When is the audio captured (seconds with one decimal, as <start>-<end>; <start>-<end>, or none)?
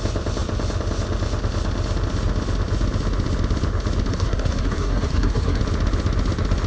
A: 0.0-4.1; 5.6-6.7